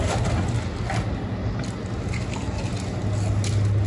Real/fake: real